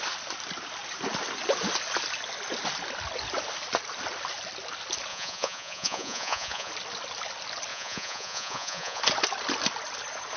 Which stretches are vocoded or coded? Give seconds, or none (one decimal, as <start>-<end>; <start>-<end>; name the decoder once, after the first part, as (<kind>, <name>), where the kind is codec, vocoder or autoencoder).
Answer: 5.1-6.7 (vocoder, Vocos); 7.7-9.0